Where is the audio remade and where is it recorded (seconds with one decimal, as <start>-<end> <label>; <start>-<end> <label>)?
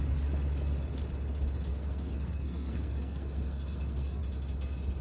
0.0-1.7 recorded; 1.7-4.2 remade; 4.2-5.0 recorded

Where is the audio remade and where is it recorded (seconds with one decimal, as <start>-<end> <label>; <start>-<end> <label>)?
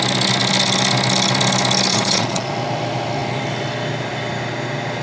0.0-1.9 recorded; 1.9-2.5 remade; 2.5-5.0 recorded